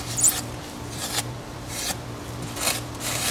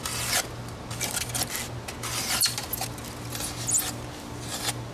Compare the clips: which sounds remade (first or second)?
first